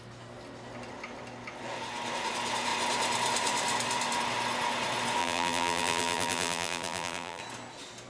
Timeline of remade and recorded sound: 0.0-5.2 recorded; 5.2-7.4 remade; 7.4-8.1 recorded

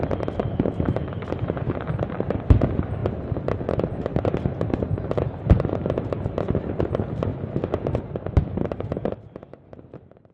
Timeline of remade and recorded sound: 0.0-3.0 remade; 3.0-3.7 recorded; 3.7-7.3 remade; 7.3-8.0 recorded; 8.0-10.3 remade